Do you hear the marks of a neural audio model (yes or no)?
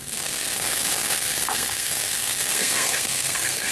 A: yes